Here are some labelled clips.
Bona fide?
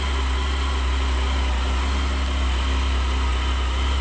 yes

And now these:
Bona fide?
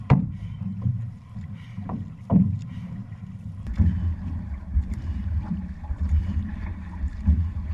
no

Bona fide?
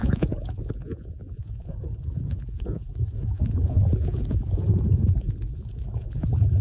no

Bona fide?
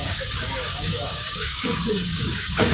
no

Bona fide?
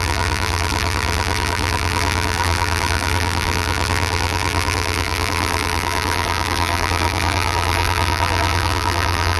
no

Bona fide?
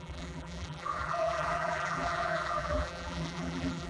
no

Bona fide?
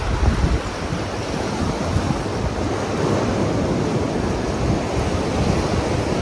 yes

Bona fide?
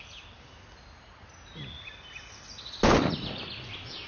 yes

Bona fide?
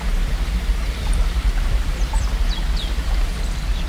yes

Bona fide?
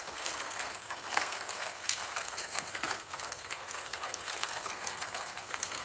no